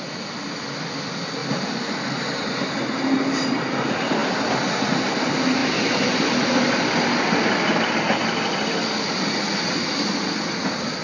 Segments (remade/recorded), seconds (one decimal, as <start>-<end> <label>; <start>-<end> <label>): 0.0-11.0 recorded